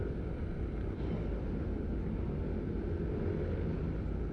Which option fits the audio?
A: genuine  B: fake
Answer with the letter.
A